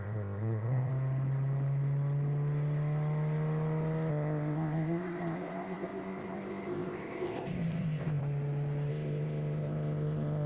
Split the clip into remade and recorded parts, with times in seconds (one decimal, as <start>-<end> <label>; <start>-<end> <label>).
0.0-0.9 remade; 0.9-4.1 recorded; 4.1-8.2 remade; 8.2-8.9 recorded; 8.9-10.5 remade